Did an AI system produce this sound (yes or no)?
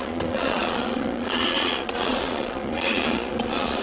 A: yes